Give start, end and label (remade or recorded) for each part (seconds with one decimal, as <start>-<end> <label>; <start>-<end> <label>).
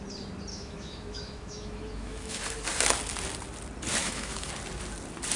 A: 0.0-0.5 recorded; 0.5-2.4 remade; 2.4-4.0 recorded; 4.0-4.5 remade; 4.5-5.4 recorded